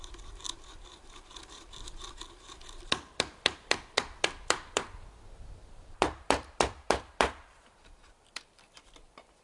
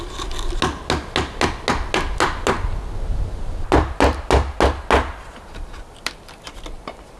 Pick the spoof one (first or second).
first